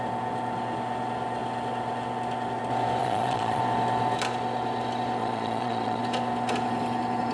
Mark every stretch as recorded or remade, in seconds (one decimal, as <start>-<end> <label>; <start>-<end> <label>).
0.0-3.0 recorded; 3.0-3.6 remade; 3.6-5.2 recorded; 5.2-6.0 remade; 6.0-7.3 recorded